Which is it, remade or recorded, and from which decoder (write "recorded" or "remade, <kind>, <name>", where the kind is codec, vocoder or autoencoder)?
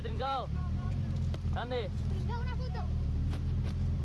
remade, vocoder, BigVGAN v2